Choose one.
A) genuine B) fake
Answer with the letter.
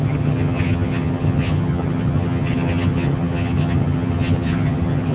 B